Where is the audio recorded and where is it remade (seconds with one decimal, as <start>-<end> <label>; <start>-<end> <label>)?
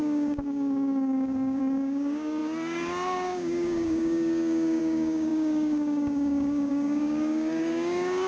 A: 0.0-8.3 remade